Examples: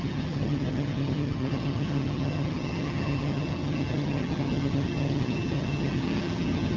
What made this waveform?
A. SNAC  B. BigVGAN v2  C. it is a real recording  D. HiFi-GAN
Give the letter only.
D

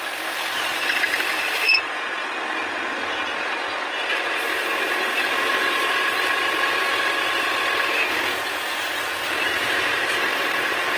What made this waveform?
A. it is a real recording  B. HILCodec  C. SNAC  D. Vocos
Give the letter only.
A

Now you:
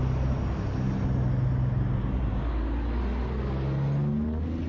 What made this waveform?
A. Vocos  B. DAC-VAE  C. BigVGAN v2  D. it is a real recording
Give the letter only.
D